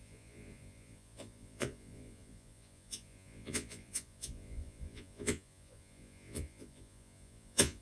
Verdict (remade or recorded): remade